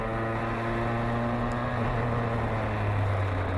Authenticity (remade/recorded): recorded